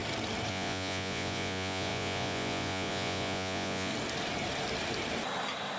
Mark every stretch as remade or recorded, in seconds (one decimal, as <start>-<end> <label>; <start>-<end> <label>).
0.0-0.5 recorded; 0.5-3.9 remade; 3.9-5.8 recorded